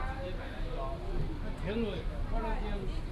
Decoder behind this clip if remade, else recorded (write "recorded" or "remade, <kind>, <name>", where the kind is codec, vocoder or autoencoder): recorded